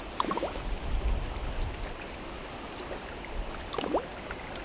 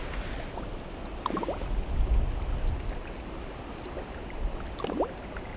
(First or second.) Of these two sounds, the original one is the second